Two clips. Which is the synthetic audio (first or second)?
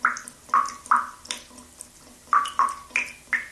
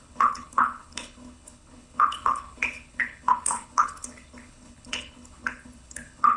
second